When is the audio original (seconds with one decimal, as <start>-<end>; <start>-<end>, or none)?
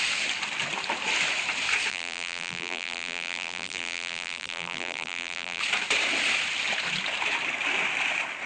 0.0-1.9; 5.6-8.5